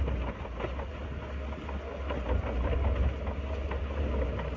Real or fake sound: real